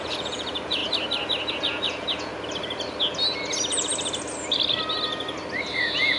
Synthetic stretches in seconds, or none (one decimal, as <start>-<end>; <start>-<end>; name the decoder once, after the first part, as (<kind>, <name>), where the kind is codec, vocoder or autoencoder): 0.0-0.8 (vocoder, Vocos); 1.5-2.3